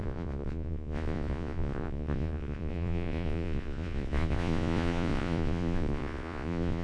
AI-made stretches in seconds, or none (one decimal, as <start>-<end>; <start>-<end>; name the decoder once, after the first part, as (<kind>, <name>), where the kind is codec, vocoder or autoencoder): 0.0-6.8 (vocoder, Vocos)

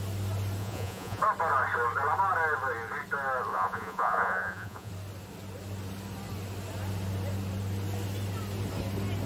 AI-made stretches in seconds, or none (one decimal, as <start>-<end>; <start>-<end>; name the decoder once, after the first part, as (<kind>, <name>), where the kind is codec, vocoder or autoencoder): 0.6-1.2 (vocoder, Vocos); 3.5-4.9

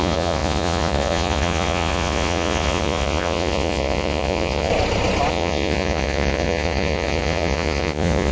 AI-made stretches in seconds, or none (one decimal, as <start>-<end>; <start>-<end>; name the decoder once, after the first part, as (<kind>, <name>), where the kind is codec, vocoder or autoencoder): 0.0-4.7 (vocoder, Vocos); 5.3-8.3

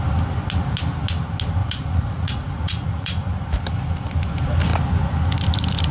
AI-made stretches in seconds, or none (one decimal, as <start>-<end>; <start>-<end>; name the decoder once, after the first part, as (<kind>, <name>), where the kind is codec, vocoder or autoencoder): 1.6-3.3 (vocoder, Vocos)

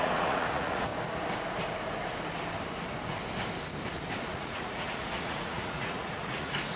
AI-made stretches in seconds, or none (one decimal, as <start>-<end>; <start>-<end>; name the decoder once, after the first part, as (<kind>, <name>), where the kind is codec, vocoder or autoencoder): 0.0-0.9 (vocoder, Vocos); 4.2-6.8